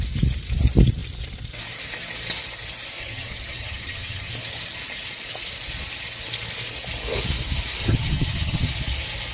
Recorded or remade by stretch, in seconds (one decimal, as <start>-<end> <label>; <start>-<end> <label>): 0.0-3.0 recorded; 3.0-4.3 remade; 4.3-7.8 recorded; 7.8-8.7 remade; 8.7-9.3 recorded